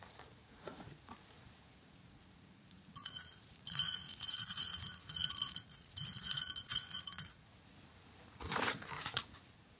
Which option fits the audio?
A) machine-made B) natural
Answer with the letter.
A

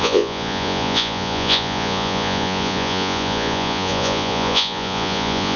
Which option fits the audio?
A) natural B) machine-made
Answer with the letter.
B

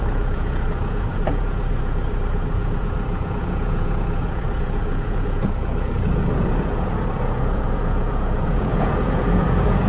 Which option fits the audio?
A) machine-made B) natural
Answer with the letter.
A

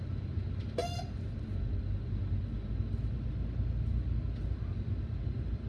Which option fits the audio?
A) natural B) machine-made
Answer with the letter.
A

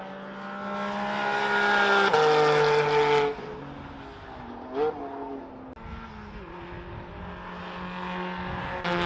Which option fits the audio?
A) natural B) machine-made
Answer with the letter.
A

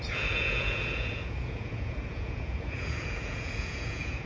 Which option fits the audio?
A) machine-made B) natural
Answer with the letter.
A